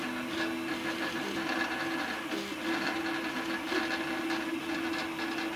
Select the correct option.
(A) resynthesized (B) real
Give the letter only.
B